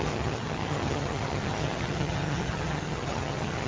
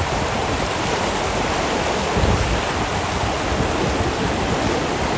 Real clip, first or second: second